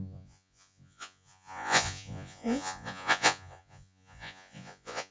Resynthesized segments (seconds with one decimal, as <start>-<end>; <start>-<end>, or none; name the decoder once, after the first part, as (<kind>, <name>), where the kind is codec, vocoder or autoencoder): 0.0-5.1 (vocoder, Vocos)